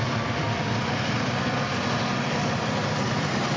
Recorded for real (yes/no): no